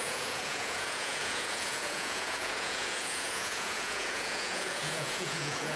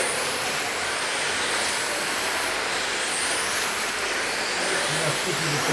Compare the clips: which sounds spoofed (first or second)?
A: first